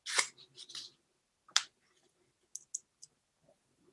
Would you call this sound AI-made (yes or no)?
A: no